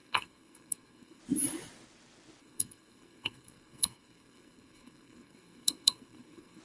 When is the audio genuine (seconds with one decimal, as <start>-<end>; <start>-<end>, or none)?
1.2-2.4